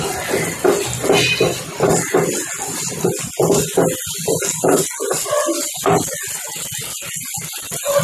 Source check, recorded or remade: recorded